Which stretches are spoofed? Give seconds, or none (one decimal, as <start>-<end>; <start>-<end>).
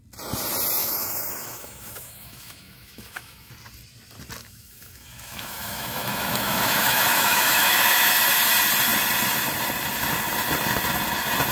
0.8-3.5; 4.4-8.2